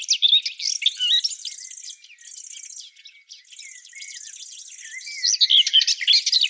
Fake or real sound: real